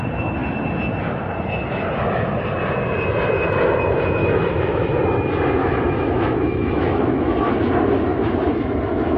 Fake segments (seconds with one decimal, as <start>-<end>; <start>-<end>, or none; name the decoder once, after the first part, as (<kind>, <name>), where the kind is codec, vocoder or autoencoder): 4.2-4.9 (autoencoder, DAC-VAE); 5.6-7.5; 8.1-9.2